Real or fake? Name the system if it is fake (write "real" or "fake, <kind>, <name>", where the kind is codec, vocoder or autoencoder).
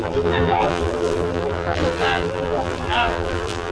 fake, vocoder, BigVGAN v2